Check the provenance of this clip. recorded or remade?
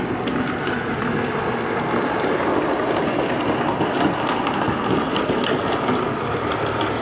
recorded